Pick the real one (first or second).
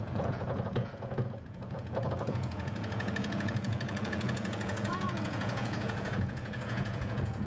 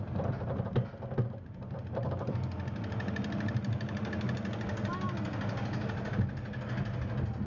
second